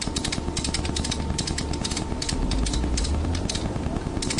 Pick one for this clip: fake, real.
real